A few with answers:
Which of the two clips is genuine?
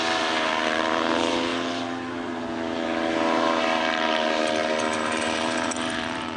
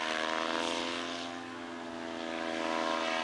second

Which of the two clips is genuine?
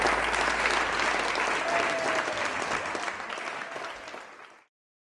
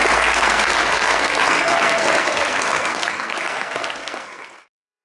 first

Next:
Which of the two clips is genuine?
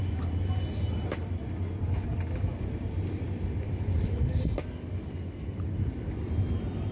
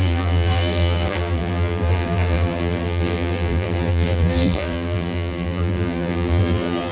first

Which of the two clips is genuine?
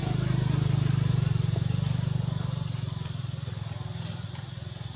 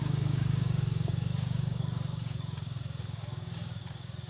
first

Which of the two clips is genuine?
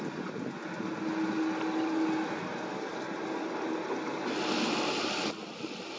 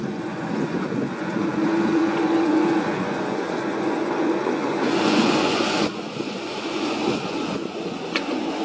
first